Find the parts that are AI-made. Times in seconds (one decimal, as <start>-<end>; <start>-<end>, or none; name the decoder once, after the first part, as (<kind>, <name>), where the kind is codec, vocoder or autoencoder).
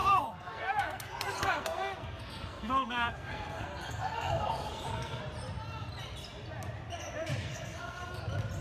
0.0-5.2 (codec, SNAC); 7.4-8.2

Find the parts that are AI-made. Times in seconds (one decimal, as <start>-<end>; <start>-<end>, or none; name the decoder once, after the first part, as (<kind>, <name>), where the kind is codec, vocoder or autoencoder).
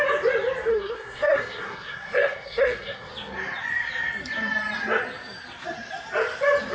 0.7-3.1 (codec, SNAC)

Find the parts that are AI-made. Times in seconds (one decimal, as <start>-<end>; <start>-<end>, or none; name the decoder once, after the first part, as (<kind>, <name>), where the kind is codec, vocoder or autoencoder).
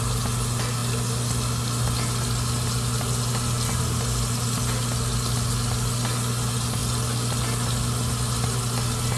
none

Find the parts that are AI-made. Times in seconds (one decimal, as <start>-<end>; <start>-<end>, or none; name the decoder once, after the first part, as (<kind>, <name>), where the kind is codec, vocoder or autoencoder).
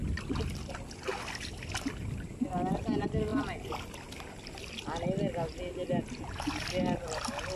none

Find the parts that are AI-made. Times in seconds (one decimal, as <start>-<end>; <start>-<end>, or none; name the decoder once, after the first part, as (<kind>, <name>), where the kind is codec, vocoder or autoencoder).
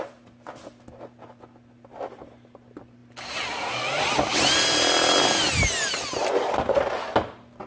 none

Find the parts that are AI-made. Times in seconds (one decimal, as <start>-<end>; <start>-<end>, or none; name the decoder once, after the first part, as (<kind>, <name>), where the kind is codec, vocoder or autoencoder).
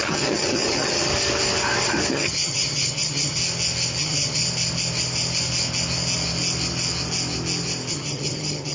0.0-1.1 (vocoder, HiFi-GAN); 2.1-3.4; 4.0-4.4; 7.9-8.7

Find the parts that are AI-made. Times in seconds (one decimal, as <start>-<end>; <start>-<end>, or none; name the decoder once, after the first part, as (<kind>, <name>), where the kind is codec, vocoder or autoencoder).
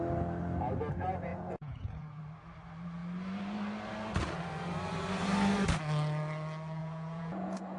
1.3-2.2 (vocoder, Vocos); 6.8-7.8